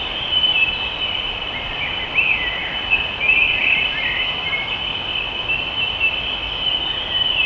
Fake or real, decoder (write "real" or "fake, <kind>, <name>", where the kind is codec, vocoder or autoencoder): real